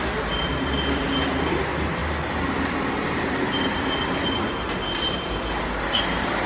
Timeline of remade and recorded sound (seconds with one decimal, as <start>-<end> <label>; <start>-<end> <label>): 0.0-6.5 recorded